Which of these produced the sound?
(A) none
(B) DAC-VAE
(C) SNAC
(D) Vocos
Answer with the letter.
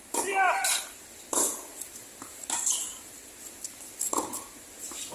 A